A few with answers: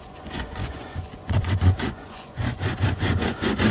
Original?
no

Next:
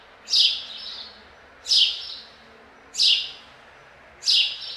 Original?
yes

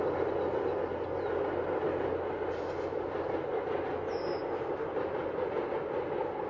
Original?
yes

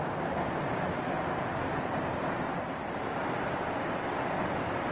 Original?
yes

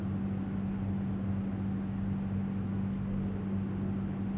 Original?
yes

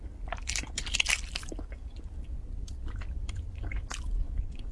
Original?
yes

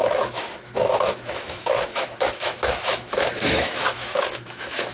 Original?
no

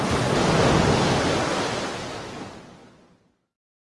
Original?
yes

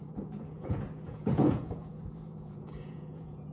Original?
no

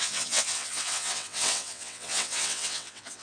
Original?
no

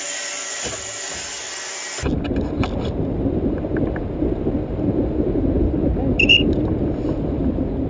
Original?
yes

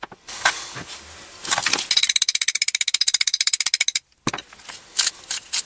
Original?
yes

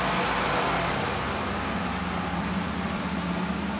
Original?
yes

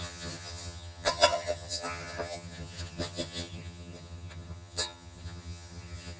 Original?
no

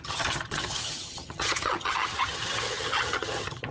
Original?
no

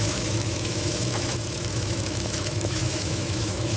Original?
no